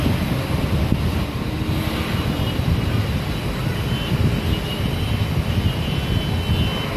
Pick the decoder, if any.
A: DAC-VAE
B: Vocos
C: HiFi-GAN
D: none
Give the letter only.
D